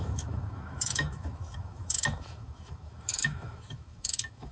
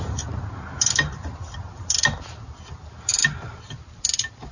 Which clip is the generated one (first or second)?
first